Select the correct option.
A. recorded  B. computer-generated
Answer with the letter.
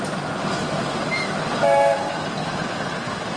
A